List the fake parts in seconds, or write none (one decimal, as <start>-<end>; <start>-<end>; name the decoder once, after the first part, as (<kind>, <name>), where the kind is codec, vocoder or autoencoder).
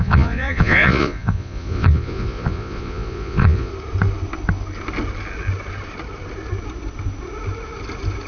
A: 0.0-3.7 (vocoder, Vocos)